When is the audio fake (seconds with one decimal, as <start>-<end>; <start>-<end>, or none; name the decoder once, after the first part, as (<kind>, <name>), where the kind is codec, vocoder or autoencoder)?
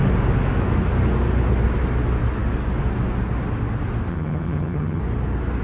4.1-5.0 (vocoder, HiFi-GAN)